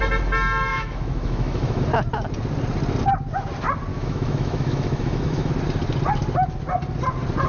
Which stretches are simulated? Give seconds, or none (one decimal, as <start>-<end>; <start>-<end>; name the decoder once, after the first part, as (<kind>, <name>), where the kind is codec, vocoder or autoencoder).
0.7-1.8 (autoencoder, DAC-VAE); 3.9-5.5